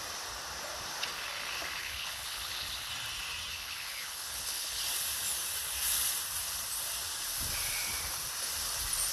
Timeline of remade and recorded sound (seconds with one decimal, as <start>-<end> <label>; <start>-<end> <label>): 0.0-1.8 recorded; 1.8-2.9 remade; 2.9-3.5 recorded; 3.5-4.8 remade; 4.8-9.1 recorded

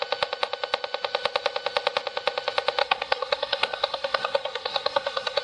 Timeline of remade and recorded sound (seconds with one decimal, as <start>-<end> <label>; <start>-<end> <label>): 0.0-2.8 recorded; 2.8-5.4 remade

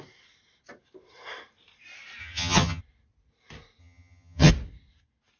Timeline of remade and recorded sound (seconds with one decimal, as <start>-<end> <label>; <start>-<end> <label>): 0.0-2.2 recorded; 2.2-2.8 remade; 2.8-3.8 recorded; 3.8-4.5 remade; 4.5-5.4 recorded

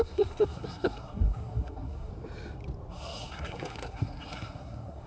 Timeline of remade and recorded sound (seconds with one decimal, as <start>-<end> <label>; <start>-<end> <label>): 0.0-2.1 remade; 2.1-2.9 recorded; 2.9-5.1 remade

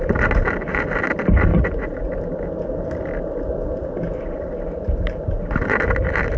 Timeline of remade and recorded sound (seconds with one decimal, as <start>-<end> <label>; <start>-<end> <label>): 0.0-1.5 recorded; 1.5-2.1 remade; 2.1-6.4 recorded

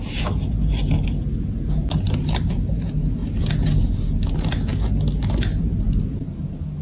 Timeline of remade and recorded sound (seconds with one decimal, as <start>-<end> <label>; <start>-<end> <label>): 0.0-6.8 recorded